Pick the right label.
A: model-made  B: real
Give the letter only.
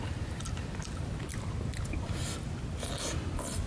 B